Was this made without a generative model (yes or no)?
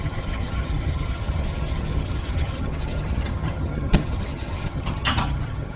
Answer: no